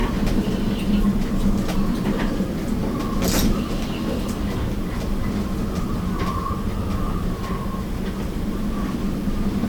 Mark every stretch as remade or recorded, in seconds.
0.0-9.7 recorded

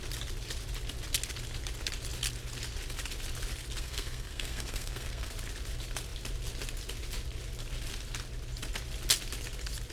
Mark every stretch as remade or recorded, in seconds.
0.0-3.8 recorded; 3.8-5.3 remade; 5.3-9.9 recorded